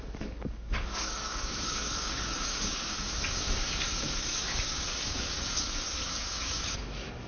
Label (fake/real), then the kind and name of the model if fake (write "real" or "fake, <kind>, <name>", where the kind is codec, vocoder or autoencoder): fake, codec, DAC